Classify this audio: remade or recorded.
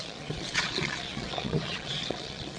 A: remade